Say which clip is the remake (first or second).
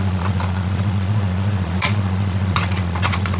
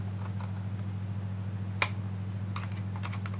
first